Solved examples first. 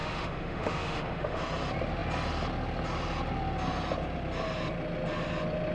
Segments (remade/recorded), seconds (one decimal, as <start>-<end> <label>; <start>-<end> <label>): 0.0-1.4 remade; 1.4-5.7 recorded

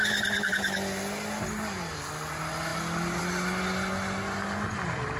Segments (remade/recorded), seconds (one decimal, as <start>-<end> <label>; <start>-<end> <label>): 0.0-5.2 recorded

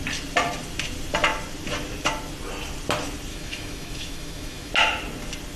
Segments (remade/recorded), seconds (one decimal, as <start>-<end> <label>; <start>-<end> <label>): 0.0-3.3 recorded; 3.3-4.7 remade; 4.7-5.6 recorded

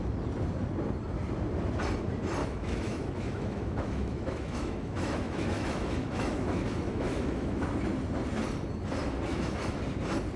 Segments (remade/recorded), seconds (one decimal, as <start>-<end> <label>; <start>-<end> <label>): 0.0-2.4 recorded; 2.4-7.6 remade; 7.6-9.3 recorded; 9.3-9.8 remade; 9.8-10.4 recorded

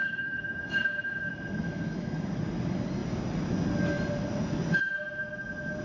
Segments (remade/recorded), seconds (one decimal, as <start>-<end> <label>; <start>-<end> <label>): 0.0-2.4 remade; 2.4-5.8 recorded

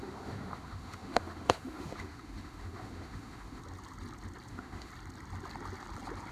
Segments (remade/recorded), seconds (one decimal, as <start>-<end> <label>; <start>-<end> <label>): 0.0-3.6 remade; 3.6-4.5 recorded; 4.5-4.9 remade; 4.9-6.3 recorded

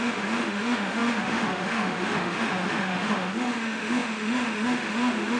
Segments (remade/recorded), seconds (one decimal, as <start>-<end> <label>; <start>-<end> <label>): 0.0-5.4 remade

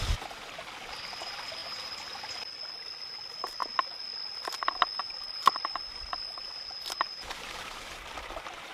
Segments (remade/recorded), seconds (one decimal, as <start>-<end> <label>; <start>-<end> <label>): 0.0-8.7 recorded